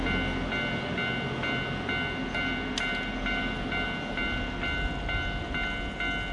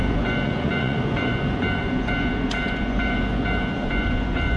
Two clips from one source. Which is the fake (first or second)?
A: second